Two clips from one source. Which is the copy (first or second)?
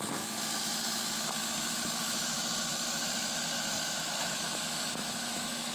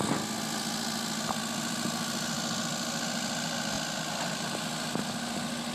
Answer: first